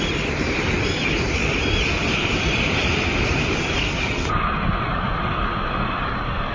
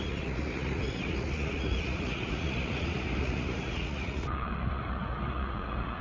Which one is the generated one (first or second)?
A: second